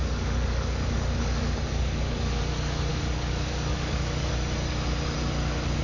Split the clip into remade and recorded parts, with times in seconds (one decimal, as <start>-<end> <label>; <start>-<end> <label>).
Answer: 0.0-2.4 remade; 2.4-2.9 recorded; 2.9-4.3 remade; 4.3-5.8 recorded